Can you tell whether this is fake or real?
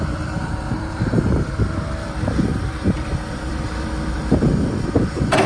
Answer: fake